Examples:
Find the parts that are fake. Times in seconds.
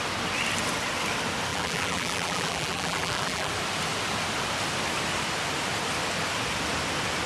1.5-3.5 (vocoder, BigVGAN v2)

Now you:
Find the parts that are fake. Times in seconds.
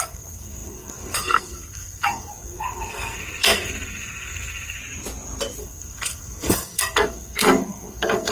0.0-4.8 (codec, SNAC); 5.6-8.3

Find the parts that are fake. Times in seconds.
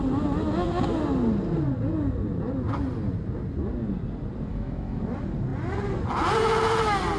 4.5-5.0 (autoencoder, DAC-VAE)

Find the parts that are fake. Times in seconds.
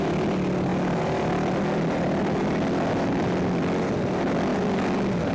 none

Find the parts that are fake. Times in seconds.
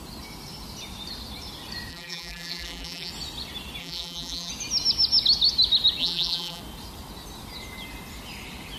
1.9-3.1 (vocoder, BigVGAN v2); 3.8-4.5; 6.0-6.6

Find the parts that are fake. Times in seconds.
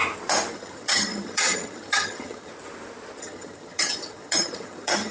0.5-2.5 (vocoder, HiFi-GAN); 3.2-5.1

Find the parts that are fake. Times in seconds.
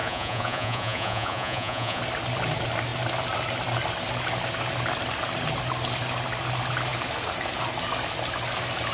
0.0-2.0 (vocoder, Vocos)